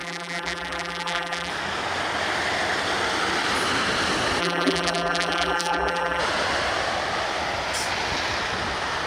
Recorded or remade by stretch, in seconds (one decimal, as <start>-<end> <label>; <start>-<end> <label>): 0.0-1.5 remade; 1.5-4.4 recorded; 4.4-6.2 remade; 6.2-9.1 recorded

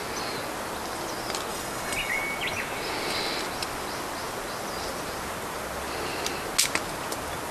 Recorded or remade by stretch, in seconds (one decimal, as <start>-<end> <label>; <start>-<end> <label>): 0.0-1.5 recorded; 1.5-2.2 remade; 2.2-7.5 recorded

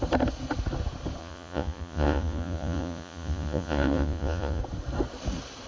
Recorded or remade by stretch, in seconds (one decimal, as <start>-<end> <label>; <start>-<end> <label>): 0.0-1.2 recorded; 1.2-4.6 remade; 4.6-5.7 recorded